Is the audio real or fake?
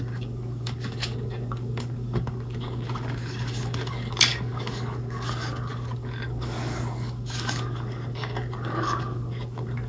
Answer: fake